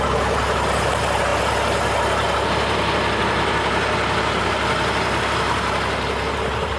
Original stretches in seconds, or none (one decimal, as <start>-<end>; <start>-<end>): 0.0-6.8